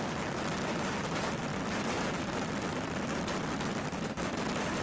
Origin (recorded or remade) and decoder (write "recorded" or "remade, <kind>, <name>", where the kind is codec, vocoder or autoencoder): recorded